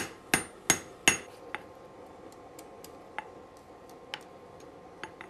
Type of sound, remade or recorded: recorded